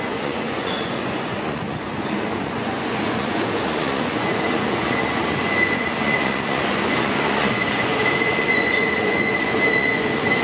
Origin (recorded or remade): remade